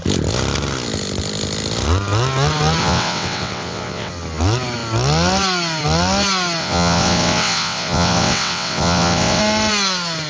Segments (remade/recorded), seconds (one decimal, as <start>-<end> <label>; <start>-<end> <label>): 0.0-2.8 recorded; 2.8-4.1 remade; 4.1-6.6 recorded; 6.6-9.4 remade; 9.4-10.3 recorded